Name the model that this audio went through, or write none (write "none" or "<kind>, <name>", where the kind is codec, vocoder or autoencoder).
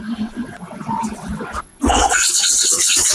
vocoder, WaveNeXt